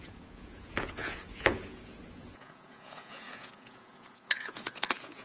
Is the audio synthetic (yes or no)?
yes